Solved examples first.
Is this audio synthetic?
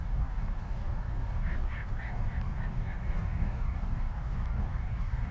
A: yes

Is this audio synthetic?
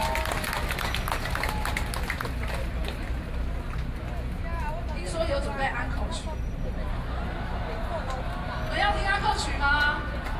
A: no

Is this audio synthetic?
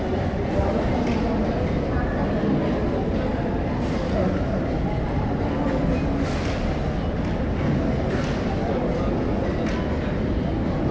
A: no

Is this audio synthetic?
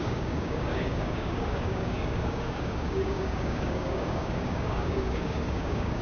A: yes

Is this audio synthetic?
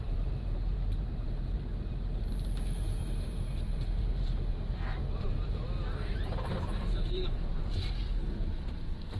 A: yes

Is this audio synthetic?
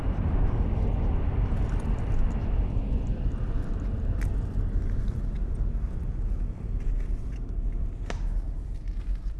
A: no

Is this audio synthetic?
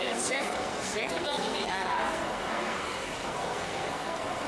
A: yes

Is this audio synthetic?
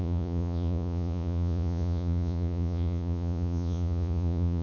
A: yes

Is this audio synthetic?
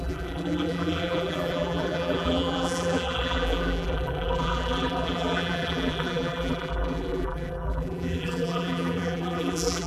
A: yes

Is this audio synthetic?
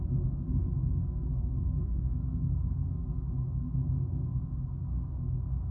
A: yes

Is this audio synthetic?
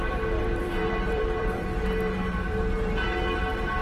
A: yes